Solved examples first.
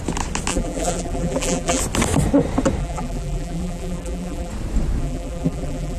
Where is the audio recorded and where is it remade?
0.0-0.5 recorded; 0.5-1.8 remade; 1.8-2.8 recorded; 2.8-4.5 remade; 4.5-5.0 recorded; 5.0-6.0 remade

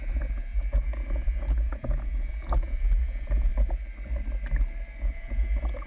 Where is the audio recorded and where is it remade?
0.0-3.5 remade; 3.5-5.0 recorded; 5.0-5.9 remade

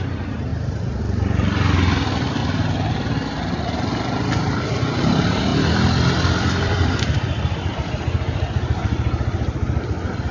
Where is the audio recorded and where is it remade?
0.0-2.4 remade; 2.4-4.4 recorded; 4.4-10.3 remade